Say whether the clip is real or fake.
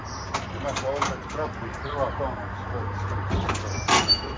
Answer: real